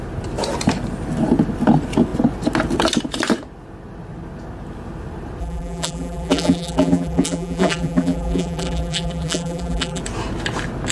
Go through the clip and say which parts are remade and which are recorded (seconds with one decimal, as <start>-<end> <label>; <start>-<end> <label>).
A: 0.0-5.4 recorded; 5.4-10.0 remade; 10.0-10.9 recorded